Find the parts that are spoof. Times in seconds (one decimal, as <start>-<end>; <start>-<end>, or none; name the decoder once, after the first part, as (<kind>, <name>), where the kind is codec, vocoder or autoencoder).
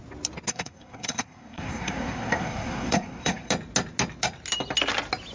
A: 0.5-3.5 (codec, SNAC)